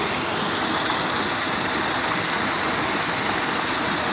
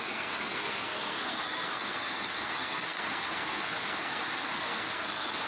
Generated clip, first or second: second